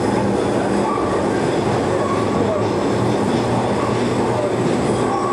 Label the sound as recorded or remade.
recorded